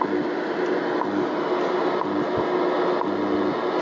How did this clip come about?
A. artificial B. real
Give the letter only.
B